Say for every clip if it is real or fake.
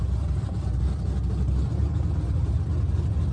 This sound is real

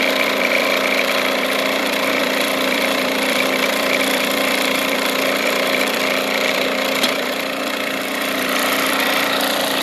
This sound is fake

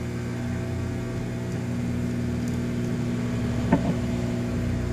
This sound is real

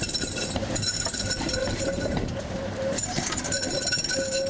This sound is fake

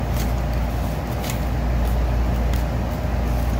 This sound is real